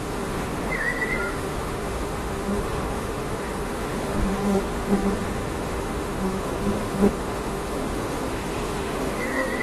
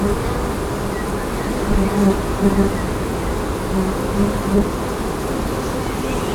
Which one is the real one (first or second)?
second